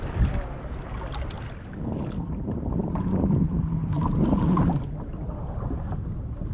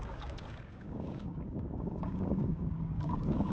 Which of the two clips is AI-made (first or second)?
second